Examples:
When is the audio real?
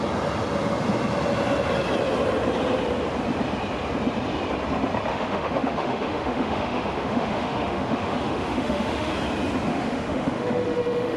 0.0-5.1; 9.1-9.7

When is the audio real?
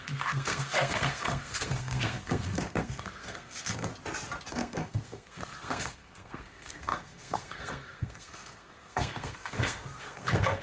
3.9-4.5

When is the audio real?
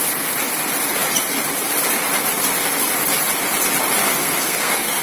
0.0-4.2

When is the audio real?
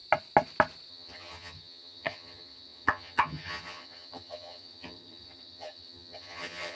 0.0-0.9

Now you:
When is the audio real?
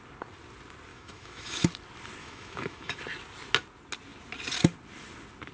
0.0-0.9; 1.7-2.2; 3.0-5.5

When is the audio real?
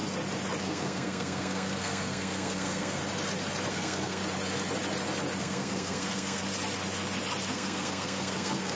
0.0-0.6; 3.0-3.7; 4.2-5.4; 6.4-7.5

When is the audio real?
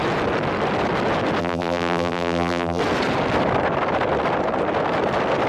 0.0-1.4; 2.8-5.5